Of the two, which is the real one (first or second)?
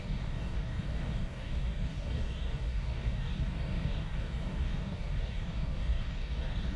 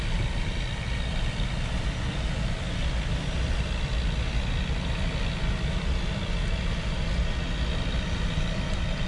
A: second